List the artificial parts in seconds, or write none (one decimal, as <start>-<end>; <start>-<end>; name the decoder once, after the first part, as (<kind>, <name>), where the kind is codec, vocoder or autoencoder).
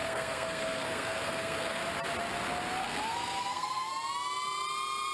0.0-1.8 (codec, SNAC); 2.8-3.9